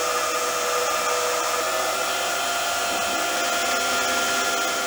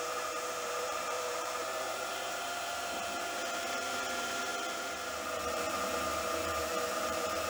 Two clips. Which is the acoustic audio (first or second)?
first